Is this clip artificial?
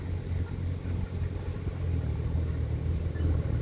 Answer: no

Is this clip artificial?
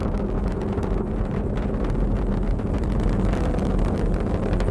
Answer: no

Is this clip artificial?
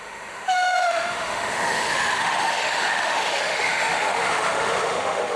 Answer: yes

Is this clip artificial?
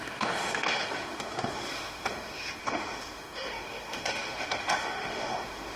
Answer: yes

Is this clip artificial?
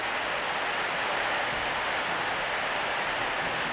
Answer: no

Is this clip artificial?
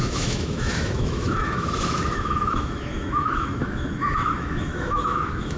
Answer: yes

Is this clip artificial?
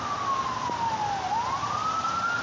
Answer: no